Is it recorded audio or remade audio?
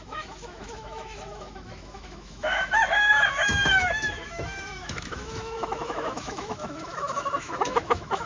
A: remade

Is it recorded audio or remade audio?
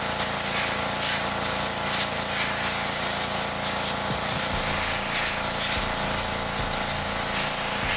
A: recorded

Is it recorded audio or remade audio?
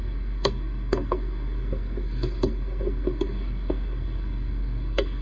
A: remade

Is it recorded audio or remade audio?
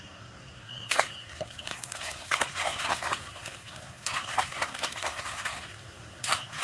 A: remade